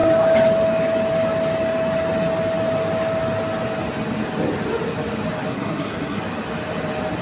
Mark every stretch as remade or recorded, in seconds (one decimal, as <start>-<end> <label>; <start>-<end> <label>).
0.0-5.5 recorded; 5.5-6.2 remade; 6.2-7.2 recorded